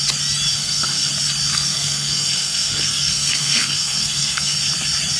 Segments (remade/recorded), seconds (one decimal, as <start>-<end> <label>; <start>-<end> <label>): 0.0-0.5 recorded; 0.5-1.1 remade; 1.1-1.5 recorded; 1.5-4.6 remade; 4.6-5.2 recorded